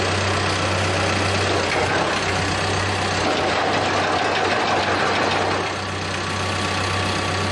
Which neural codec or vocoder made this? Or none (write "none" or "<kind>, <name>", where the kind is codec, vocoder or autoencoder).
none